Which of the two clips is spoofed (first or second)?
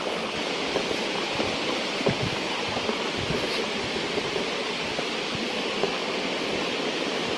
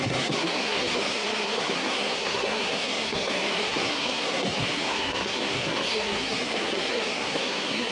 second